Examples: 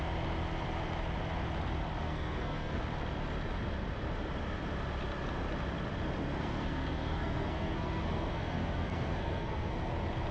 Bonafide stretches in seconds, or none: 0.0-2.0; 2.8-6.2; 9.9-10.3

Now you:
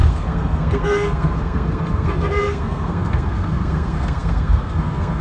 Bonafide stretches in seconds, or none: none

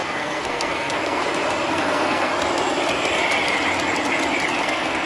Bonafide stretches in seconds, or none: 1.2-1.7; 2.3-4.6

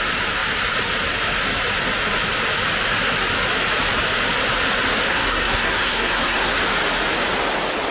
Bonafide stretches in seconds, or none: 0.0-5.1; 6.5-7.9

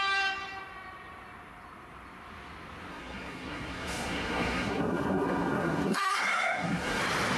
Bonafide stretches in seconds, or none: 0.0-2.9; 7.0-7.4

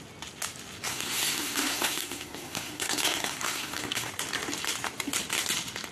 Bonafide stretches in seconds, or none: 0.0-0.9; 4.1-5.9